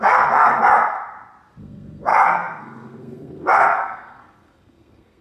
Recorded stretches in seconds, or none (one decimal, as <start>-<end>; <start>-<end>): 0.6-1.6